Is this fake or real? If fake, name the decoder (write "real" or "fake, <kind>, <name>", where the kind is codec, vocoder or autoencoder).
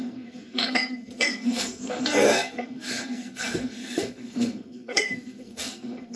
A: fake, codec, SNAC